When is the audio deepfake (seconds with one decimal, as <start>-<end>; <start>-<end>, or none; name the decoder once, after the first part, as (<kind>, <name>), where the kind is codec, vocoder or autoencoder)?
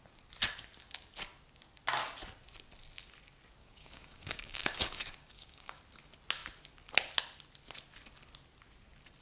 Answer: 3.6-5.8 (codec, DAC)